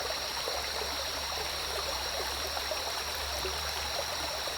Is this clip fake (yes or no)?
yes